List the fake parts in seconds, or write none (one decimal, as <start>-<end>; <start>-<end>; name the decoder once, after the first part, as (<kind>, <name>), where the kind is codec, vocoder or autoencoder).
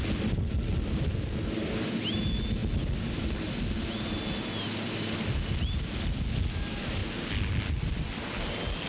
none